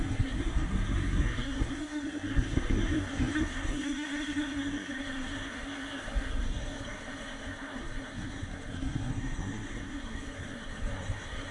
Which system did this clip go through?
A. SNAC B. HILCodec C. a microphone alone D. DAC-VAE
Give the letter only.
A